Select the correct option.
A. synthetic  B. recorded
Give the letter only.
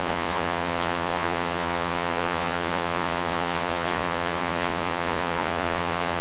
A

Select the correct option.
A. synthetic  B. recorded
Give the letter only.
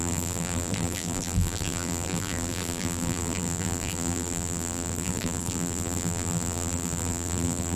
A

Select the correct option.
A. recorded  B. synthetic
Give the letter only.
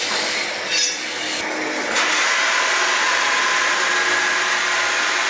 A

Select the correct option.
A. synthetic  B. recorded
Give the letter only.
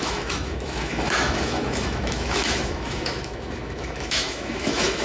A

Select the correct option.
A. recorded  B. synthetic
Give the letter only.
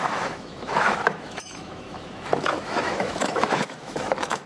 B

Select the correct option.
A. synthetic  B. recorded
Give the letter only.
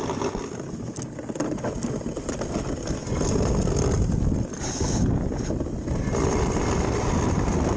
B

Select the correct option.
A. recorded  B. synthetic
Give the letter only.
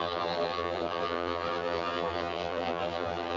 B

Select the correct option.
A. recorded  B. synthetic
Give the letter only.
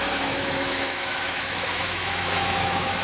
B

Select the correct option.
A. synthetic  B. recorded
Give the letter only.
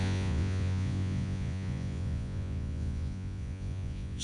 A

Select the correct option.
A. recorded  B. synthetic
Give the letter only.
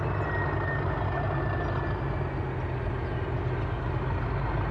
A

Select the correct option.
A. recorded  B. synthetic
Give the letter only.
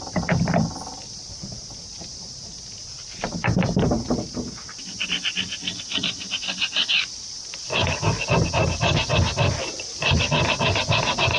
A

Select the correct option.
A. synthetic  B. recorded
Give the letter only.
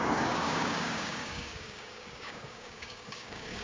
A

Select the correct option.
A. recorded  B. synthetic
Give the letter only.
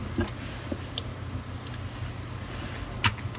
A